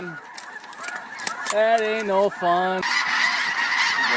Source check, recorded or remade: recorded